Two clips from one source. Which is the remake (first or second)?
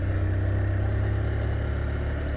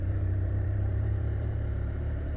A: second